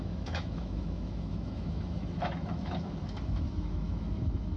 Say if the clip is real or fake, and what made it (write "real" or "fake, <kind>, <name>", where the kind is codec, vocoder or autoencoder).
fake, autoencoder, DAC-VAE